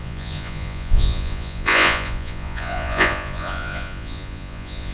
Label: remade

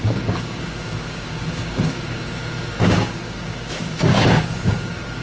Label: remade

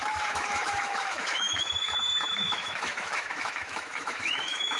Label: remade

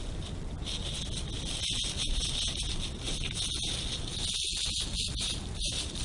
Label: recorded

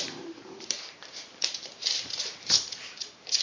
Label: remade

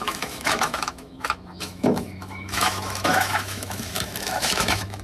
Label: remade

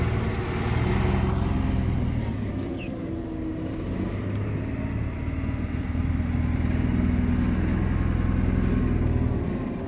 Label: recorded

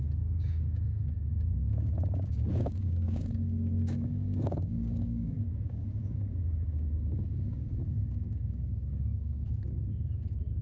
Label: remade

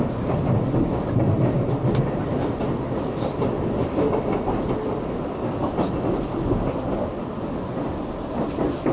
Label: recorded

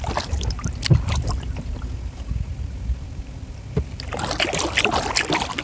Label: recorded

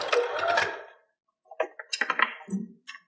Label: recorded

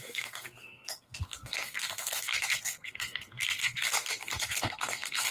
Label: remade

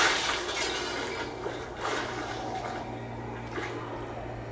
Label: recorded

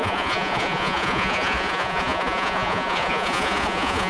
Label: remade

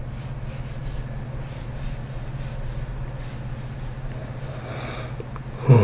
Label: recorded